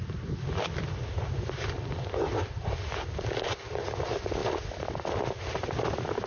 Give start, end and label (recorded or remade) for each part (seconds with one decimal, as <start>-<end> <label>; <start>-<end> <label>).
0.0-6.3 recorded